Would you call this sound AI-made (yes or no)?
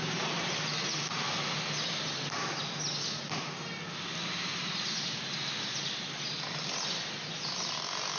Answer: no